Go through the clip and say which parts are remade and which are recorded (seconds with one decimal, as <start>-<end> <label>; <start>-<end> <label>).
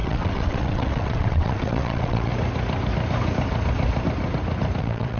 0.0-2.3 remade; 2.3-4.8 recorded; 4.8-5.2 remade